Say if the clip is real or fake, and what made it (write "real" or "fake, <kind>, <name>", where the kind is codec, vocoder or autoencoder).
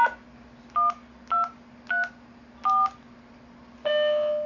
real